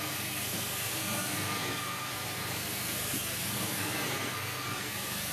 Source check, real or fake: fake